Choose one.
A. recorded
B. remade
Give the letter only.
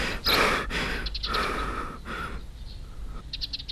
A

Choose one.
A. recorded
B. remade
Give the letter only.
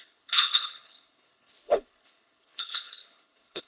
B